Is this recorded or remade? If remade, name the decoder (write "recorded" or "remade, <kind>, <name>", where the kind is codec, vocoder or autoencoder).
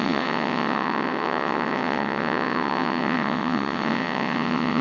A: remade, vocoder, WaveNeXt